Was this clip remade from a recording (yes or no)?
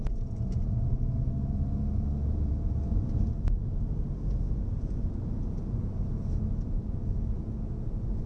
yes